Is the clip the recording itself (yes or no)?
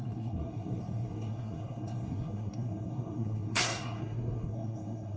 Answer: no